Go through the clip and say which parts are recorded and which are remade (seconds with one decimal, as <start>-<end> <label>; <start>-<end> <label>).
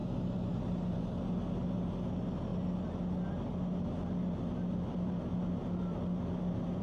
0.0-1.0 remade; 1.0-6.8 recorded